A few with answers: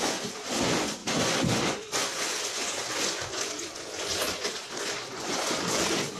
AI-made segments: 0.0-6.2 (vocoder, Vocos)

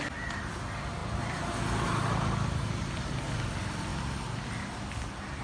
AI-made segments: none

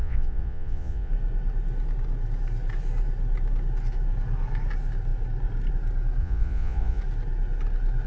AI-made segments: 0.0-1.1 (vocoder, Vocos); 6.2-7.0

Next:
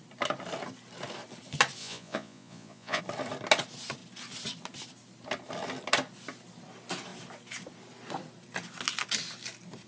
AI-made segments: 1.8-3.0 (vocoder, Vocos)

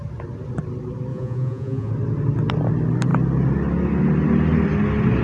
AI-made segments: 1.1-1.9 (vocoder, Vocos)

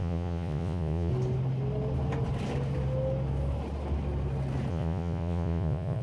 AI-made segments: 0.0-1.1 (vocoder, Vocos); 4.7-6.0

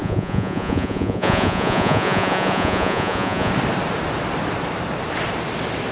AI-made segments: 0.0-3.5 (vocoder, Vocos)